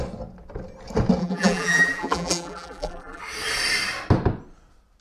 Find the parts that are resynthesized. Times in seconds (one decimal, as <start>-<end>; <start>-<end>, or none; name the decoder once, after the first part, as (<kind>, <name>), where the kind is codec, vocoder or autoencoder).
1.2-3.2 (vocoder, BigVGAN v2)